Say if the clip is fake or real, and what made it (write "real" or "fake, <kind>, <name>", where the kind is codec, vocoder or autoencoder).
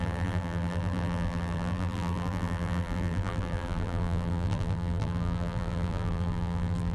fake, vocoder, BigVGAN v2